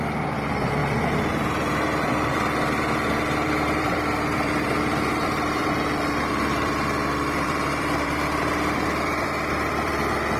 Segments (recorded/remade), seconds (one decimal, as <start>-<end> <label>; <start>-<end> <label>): 0.0-10.4 remade